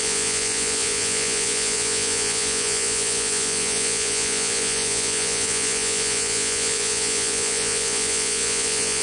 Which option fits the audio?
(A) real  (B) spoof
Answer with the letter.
B